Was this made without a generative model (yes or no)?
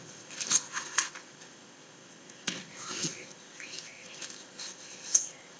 no